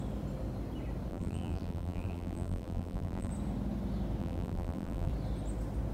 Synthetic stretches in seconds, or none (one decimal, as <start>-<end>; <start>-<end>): 1.1-3.3; 4.2-5.1